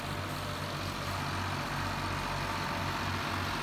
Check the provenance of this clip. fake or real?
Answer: real